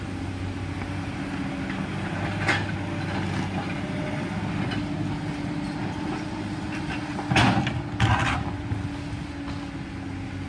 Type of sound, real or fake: real